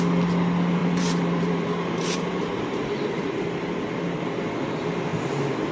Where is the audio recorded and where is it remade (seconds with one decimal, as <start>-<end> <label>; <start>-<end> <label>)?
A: 0.0-0.8 recorded; 0.8-4.2 remade; 4.2-5.7 recorded